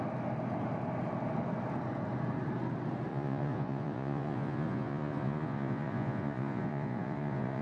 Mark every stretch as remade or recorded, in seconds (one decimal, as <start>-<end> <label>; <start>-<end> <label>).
0.0-3.1 recorded; 3.1-7.6 remade